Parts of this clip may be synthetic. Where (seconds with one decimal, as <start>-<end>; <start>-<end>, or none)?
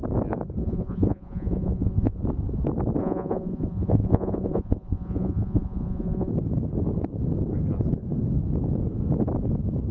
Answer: 0.6-2.2; 3.0-6.3